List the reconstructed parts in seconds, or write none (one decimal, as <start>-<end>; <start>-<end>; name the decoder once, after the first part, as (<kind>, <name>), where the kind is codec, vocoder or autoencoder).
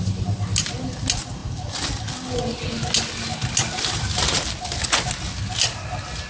none